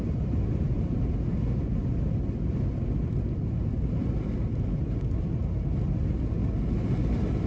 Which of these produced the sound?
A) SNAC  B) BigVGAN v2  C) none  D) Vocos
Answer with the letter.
C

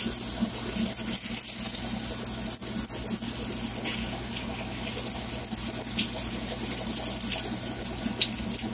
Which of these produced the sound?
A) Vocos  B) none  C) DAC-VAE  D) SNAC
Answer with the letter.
B